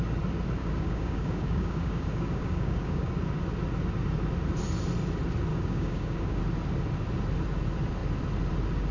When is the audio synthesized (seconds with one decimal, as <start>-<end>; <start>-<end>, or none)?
0.6-3.1; 5.5-6.4